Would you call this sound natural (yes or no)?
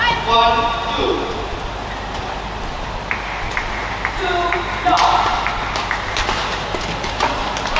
no